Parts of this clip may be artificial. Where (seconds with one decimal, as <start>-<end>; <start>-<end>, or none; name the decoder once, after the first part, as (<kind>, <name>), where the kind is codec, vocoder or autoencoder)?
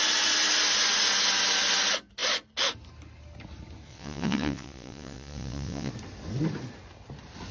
3.9-5.9 (vocoder, WaveNeXt)